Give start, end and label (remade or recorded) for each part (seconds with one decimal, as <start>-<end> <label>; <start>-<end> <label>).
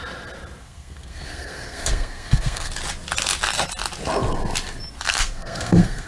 0.0-0.6 recorded; 0.6-2.7 remade; 2.7-5.1 recorded; 5.1-6.1 remade